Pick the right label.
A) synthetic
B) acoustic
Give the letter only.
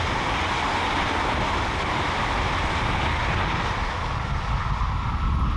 B